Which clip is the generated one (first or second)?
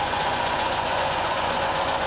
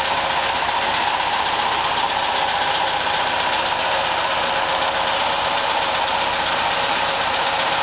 first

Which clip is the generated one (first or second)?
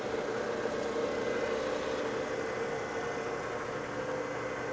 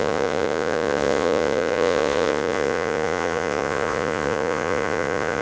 second